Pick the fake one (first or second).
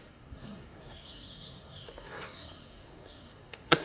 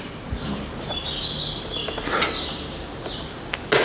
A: first